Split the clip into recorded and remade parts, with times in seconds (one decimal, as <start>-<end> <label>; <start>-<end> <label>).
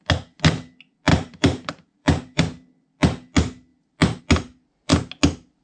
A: 0.0-1.1 recorded; 1.1-2.4 remade; 2.4-5.6 recorded